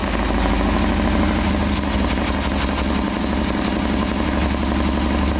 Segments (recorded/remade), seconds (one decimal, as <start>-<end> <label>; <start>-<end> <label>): 0.0-5.4 recorded